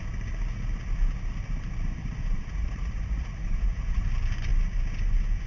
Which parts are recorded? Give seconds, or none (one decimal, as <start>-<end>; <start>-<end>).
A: 0.0-2.2; 4.0-5.5

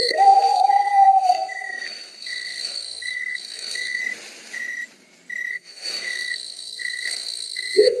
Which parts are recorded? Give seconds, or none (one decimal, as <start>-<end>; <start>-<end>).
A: 4.0-5.5

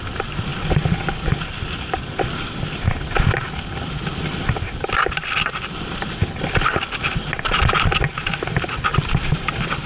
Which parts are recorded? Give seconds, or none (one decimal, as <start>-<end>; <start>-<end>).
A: 0.0-0.5; 4.0-8.9; 9.5-9.9